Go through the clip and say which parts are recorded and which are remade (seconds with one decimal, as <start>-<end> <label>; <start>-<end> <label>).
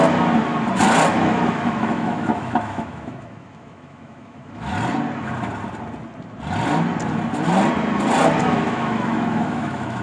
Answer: 0.0-1.1 recorded; 1.1-4.7 remade; 4.7-8.4 recorded; 8.4-10.0 remade